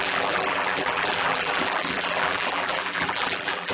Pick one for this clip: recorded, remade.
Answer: remade